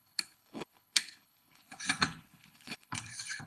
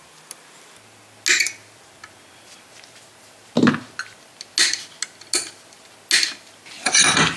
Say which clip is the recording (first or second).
second